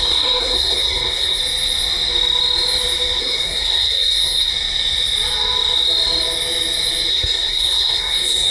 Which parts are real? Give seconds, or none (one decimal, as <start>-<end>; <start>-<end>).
1.4-3.2; 4.5-7.1